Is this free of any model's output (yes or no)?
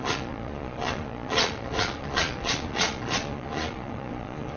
no